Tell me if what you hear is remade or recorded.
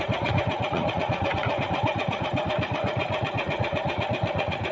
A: remade